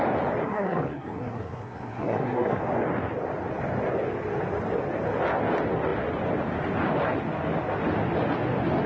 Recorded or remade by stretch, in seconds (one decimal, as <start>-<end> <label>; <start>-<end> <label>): 0.0-0.4 recorded; 0.4-2.6 remade; 2.6-8.9 recorded